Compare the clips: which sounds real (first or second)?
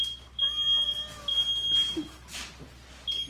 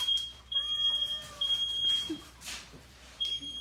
first